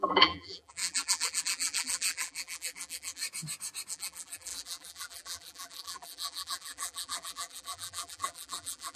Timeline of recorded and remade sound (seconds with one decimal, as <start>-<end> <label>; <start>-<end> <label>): 0.0-3.2 remade; 3.2-3.9 recorded; 3.9-9.0 remade